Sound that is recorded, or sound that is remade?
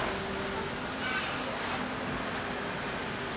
recorded